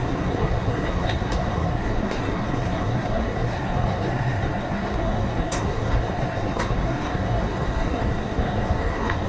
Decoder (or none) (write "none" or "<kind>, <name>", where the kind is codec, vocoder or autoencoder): codec, SNAC